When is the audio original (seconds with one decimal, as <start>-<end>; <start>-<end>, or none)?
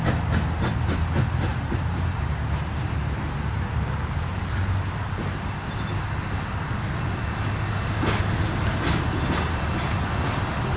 0.0-1.5; 5.8-10.8